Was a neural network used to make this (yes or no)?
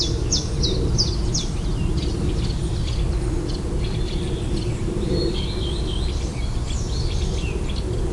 no